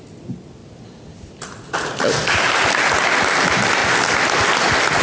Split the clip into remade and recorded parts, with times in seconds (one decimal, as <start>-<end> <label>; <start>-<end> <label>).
0.0-5.0 recorded